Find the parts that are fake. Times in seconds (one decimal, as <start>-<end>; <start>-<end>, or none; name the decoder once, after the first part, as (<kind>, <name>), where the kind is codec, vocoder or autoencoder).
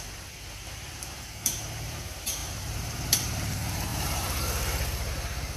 0.0-5.6 (vocoder, BigVGAN v2)